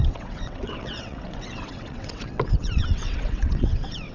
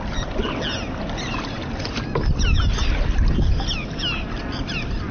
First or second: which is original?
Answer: second